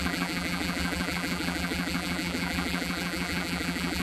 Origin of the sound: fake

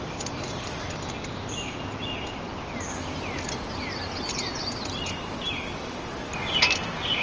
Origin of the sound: real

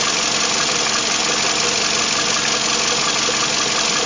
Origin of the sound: real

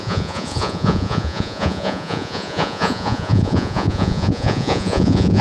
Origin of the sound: fake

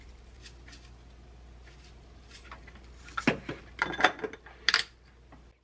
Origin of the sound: real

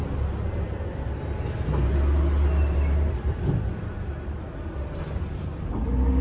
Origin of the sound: real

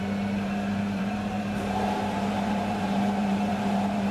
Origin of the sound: fake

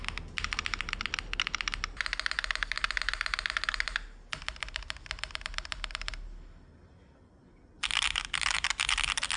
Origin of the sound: real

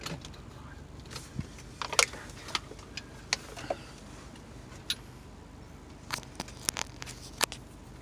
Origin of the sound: real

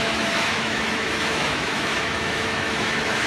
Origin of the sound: fake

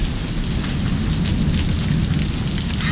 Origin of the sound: real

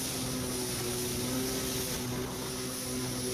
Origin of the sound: real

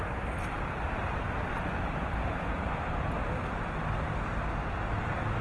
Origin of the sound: real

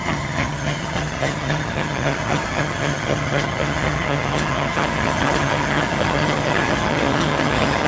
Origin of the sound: fake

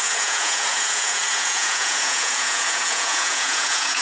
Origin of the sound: fake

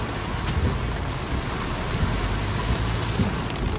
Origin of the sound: real